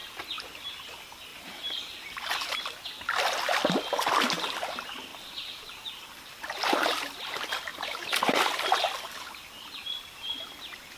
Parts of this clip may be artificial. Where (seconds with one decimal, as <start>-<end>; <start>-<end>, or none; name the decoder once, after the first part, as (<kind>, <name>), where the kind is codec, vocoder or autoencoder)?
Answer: 1.3-2.6 (vocoder, BigVGAN v2); 5.1-5.9; 7.7-8.5